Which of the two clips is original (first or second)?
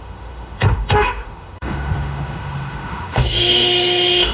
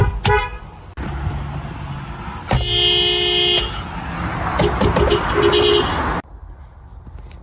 second